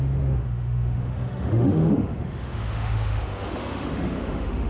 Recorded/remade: remade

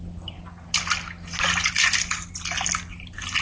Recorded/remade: recorded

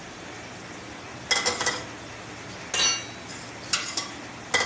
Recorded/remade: recorded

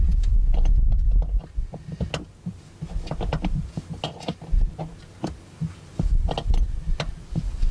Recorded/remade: recorded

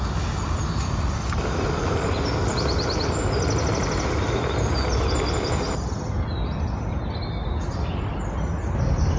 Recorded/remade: recorded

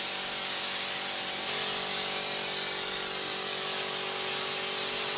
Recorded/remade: recorded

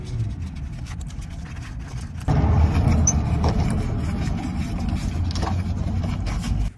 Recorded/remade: recorded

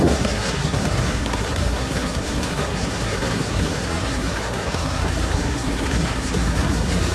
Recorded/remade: remade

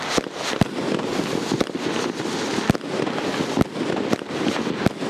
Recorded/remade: recorded